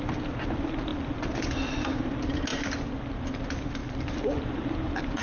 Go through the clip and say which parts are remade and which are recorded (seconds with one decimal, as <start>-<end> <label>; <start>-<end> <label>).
0.0-3.8 recorded; 3.8-5.2 remade